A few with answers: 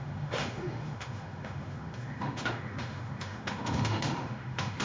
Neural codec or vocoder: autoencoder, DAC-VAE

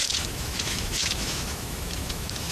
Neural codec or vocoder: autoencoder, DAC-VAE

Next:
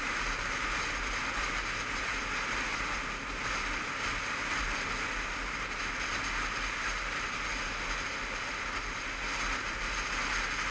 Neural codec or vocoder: none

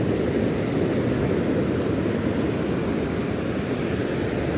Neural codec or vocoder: none